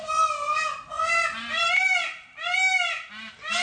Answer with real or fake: real